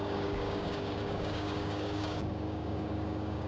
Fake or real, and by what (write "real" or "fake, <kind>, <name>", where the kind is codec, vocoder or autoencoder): fake, codec, DAC